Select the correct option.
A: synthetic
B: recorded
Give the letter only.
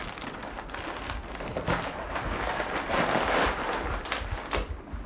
B